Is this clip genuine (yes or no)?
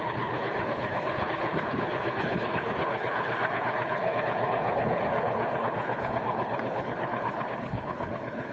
no